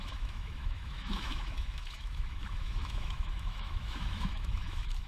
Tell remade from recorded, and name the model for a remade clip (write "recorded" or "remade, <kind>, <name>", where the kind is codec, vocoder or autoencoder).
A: remade, autoencoder, DAC-VAE